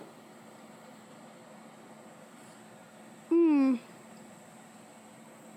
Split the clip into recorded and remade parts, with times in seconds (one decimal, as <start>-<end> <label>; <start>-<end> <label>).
0.0-5.6 recorded